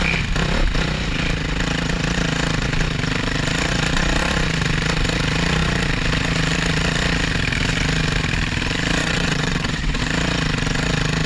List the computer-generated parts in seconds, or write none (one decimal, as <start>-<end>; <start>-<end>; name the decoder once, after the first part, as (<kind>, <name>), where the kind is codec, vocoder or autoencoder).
9.0-10.0 (vocoder, WaveNeXt)